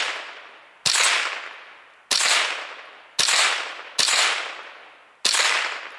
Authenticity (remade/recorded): recorded